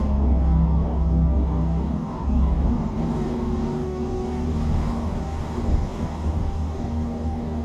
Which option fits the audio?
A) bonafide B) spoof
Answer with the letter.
B